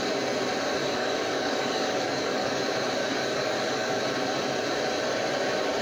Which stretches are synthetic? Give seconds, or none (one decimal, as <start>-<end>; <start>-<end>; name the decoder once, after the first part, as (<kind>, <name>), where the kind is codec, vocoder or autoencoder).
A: 0.8-2.6 (codec, DAC); 3.0-4.0